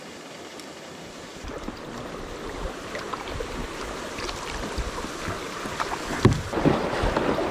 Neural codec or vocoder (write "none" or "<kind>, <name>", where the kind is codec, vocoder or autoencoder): none